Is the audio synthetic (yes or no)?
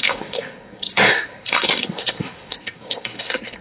yes